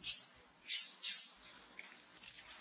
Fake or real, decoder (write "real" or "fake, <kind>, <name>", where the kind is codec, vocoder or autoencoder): real